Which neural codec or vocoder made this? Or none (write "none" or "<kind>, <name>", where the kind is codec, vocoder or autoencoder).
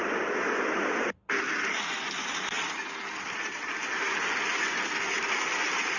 none